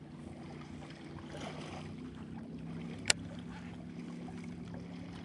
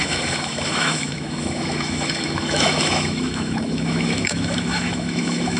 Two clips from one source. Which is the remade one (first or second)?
second